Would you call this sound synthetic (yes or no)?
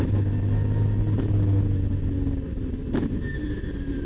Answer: no